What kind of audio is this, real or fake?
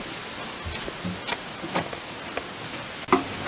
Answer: real